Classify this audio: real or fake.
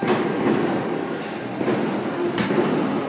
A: real